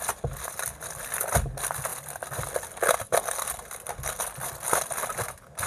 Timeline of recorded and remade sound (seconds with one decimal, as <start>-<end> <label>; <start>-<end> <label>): 0.0-5.7 recorded